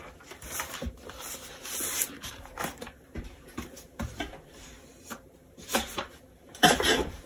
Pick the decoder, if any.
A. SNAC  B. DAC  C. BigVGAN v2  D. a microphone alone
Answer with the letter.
C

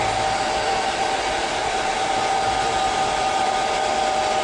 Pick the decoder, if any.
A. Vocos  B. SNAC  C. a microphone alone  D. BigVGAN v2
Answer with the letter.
D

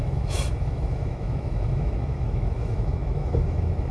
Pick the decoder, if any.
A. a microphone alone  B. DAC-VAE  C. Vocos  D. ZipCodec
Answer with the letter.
B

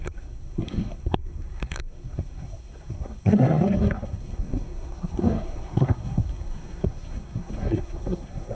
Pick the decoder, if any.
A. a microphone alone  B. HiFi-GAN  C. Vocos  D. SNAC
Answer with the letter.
D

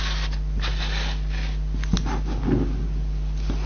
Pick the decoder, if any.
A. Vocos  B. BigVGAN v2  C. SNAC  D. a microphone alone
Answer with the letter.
D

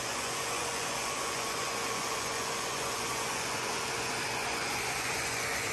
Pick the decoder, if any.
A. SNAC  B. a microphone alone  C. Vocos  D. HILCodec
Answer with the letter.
C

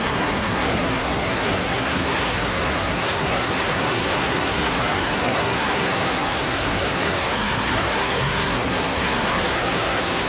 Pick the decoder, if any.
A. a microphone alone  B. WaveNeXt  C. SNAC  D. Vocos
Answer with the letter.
C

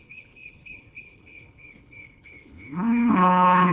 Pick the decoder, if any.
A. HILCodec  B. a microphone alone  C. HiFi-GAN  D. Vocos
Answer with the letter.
A